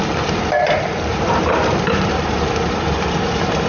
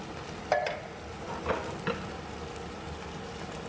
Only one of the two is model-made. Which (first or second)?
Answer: first